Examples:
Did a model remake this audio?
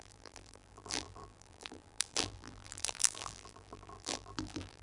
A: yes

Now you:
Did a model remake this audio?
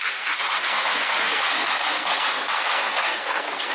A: yes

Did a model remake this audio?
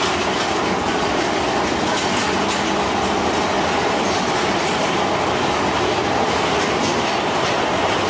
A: no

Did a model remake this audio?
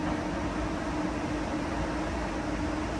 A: no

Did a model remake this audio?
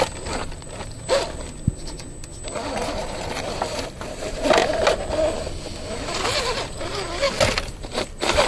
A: no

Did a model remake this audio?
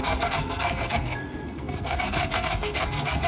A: yes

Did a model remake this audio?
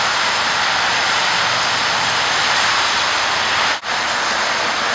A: no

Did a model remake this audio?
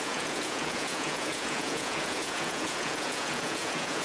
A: yes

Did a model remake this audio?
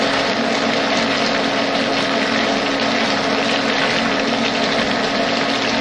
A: no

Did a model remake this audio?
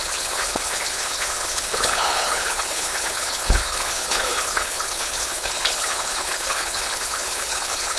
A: yes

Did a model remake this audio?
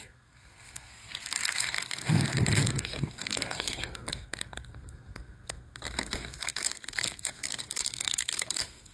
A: yes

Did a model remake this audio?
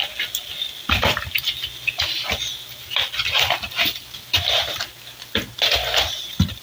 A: no